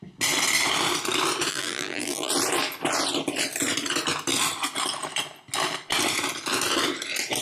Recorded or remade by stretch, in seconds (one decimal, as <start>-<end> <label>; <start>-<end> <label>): 0.0-1.5 recorded; 1.5-2.3 remade; 2.3-7.4 recorded